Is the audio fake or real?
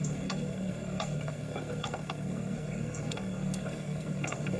fake